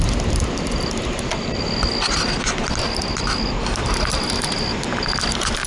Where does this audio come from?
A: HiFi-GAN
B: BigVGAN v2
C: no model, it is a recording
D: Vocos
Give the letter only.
C